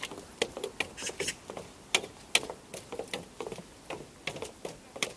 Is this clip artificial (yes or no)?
no